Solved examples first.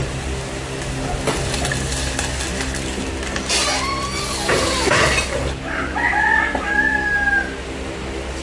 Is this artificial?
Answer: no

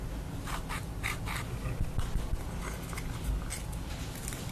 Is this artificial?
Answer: no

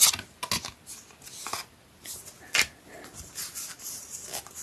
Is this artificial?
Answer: no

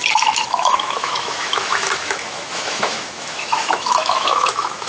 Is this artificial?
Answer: yes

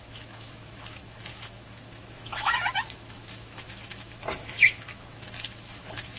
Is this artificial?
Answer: yes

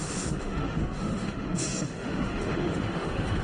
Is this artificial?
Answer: yes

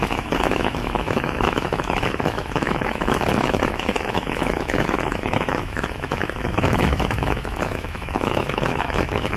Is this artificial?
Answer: yes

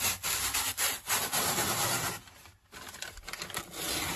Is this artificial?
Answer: no